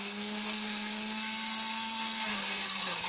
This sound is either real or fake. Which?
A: fake